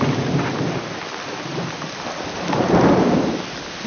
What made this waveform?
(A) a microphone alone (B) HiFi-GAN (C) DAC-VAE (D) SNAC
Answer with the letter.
A